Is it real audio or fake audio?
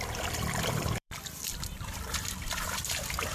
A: fake